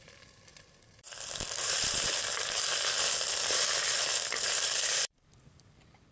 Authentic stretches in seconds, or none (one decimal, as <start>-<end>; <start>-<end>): none